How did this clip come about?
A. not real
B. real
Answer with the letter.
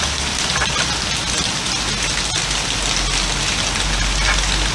B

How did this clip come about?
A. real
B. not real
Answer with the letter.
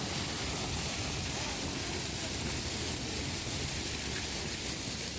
A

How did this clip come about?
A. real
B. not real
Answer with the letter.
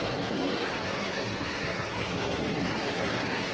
B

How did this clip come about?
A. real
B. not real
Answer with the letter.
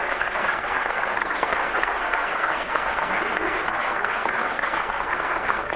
B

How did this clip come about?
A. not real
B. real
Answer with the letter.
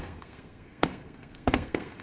A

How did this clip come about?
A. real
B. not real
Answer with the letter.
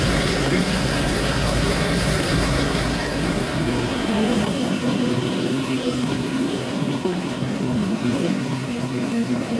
B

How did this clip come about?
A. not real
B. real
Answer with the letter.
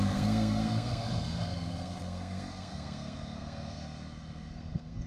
A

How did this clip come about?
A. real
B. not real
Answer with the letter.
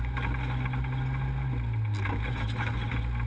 A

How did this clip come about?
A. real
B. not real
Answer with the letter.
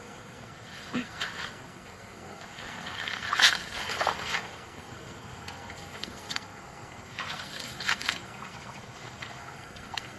B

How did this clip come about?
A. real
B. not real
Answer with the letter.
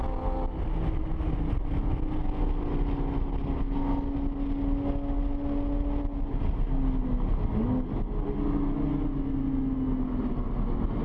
A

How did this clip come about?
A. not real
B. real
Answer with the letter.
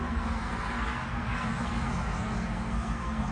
A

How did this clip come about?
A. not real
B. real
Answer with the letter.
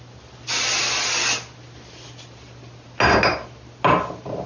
B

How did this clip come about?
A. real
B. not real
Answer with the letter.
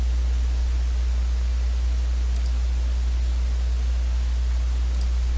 A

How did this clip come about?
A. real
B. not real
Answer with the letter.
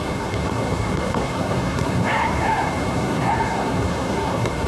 B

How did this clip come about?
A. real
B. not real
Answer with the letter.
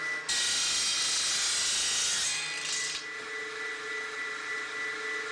A